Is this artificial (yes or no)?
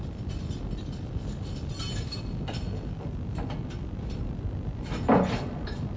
no